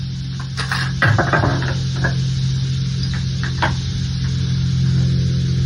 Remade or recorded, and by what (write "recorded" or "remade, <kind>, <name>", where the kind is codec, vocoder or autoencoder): recorded